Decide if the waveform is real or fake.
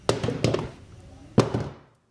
real